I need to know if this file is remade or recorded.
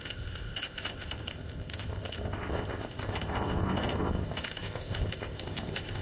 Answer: remade